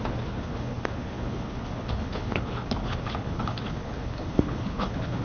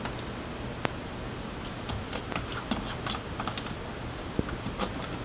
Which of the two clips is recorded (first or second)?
second